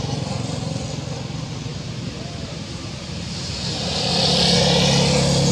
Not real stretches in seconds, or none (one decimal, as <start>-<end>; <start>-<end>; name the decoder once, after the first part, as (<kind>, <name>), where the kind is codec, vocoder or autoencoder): 1.7-4.1 (vocoder, BigVGAN v2)